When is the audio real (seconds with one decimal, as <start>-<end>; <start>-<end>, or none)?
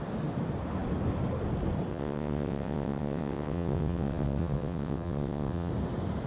0.0-1.9; 5.7-6.3